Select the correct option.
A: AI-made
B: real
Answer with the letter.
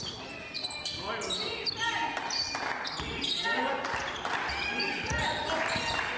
B